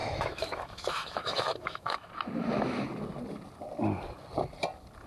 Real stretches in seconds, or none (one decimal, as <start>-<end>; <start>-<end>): 2.1-5.1